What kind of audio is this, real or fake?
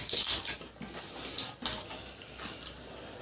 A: real